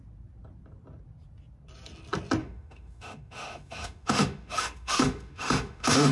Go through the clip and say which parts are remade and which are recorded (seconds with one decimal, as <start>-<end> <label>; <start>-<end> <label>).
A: 0.0-2.4 recorded; 2.4-6.1 remade